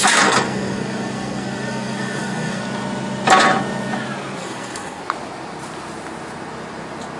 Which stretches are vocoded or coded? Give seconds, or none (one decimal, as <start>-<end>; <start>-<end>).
0.0-2.6; 4.4-5.0